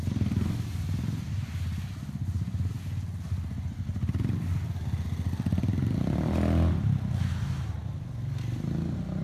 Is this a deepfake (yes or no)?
no